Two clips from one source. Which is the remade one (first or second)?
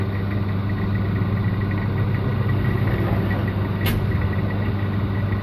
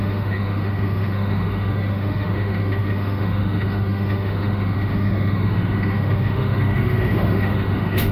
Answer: second